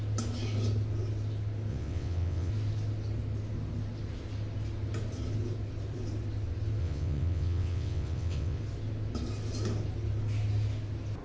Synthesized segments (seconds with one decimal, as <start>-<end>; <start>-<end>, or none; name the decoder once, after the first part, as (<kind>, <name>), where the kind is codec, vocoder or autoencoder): 1.7-2.5 (vocoder, WaveNeXt); 6.8-8.6